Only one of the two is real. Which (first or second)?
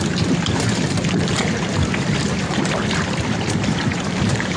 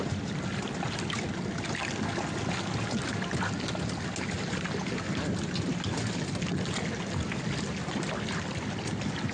second